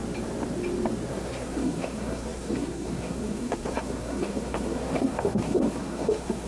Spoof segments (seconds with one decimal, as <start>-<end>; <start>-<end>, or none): 1.1-6.5